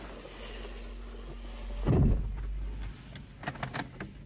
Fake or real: real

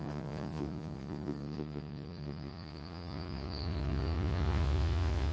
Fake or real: fake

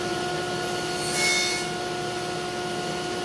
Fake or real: real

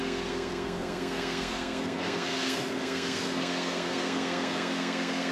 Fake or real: fake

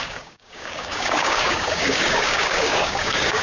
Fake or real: fake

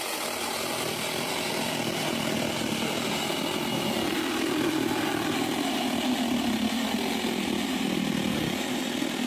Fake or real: real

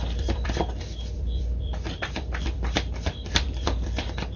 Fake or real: fake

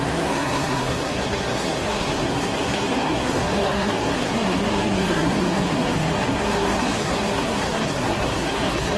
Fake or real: fake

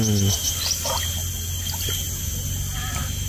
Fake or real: real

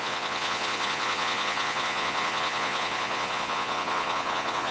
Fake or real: fake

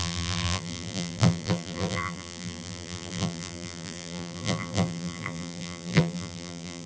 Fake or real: fake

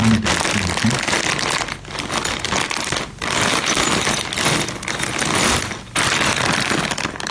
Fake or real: real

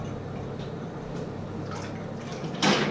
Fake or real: real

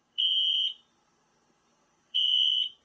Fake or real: fake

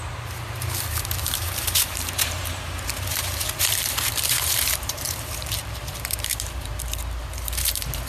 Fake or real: fake